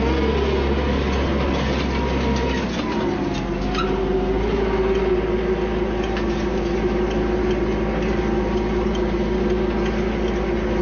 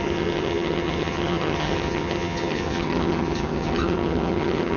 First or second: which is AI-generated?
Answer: second